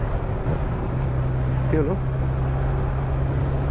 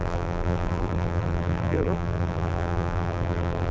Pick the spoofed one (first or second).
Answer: second